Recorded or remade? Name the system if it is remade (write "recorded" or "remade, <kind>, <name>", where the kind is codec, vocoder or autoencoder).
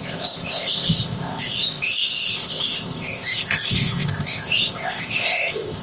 remade, codec, ZipCodec